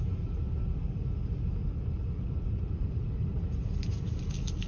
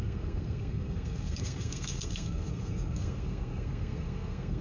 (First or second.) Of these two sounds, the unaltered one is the first